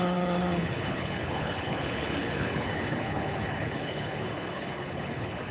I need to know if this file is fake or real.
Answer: fake